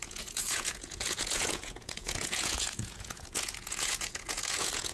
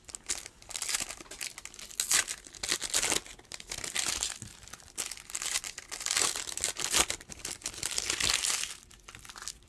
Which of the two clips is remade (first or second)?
first